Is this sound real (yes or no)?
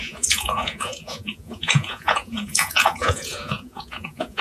no